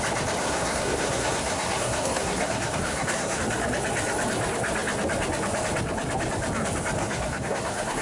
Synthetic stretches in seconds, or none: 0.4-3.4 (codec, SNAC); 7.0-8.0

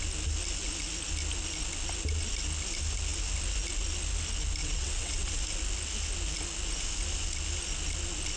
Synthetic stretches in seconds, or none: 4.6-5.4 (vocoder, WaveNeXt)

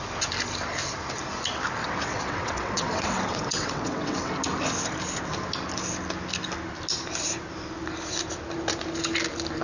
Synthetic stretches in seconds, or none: 1.8-4.3 (vocoder, WaveNeXt)

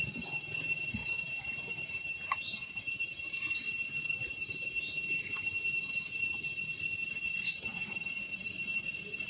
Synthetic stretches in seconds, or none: 1.0-6.2 (vocoder, BigVGAN v2)

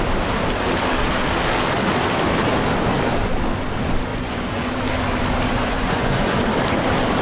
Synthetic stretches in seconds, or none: 4.1-4.7 (vocoder, Vocos); 5.5-6.4